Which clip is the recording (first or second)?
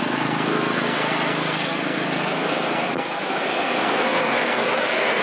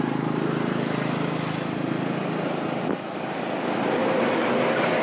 second